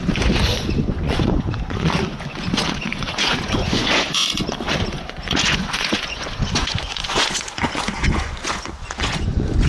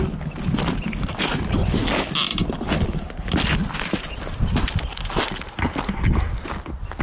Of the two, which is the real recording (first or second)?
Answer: second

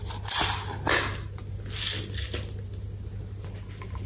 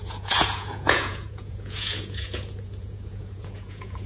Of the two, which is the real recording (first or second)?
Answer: first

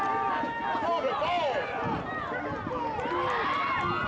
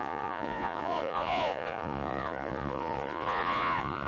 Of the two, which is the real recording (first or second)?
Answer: first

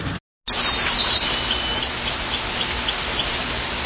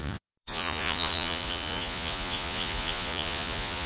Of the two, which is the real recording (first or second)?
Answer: first